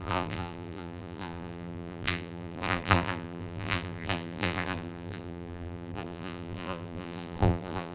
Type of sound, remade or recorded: remade